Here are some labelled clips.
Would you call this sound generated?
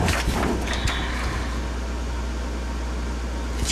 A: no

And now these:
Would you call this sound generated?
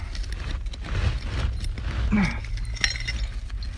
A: no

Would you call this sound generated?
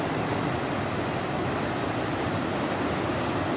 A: no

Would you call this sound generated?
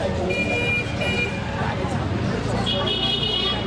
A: no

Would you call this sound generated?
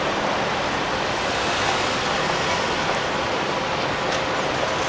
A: no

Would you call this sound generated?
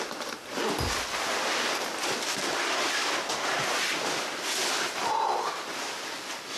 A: no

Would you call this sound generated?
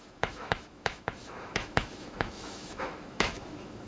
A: yes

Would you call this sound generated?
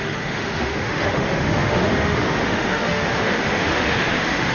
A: yes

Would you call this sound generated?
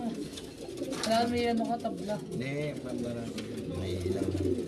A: no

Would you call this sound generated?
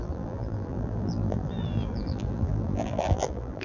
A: yes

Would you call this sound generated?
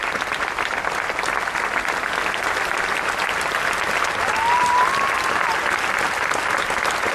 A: no